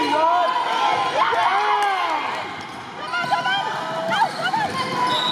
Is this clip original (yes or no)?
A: yes